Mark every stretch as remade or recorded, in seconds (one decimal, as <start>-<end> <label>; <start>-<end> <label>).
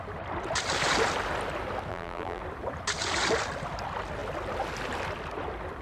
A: 0.0-1.9 recorded; 1.9-2.4 remade; 2.4-5.8 recorded